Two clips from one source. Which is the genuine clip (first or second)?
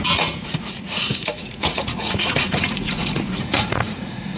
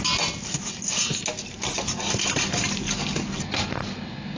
second